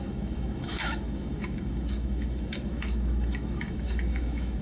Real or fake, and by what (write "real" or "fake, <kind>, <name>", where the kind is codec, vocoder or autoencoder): fake, autoencoder, DAC-VAE